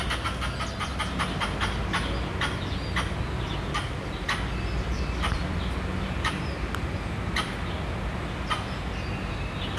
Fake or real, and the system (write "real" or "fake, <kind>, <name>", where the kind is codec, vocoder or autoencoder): real